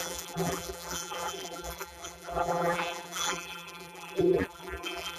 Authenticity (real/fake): fake